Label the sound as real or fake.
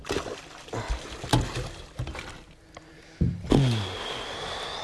real